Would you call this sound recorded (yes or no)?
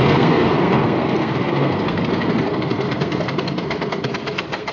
no